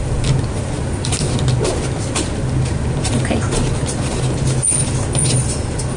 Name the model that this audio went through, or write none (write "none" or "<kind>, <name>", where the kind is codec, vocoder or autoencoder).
none